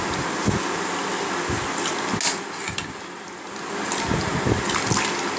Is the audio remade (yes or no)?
no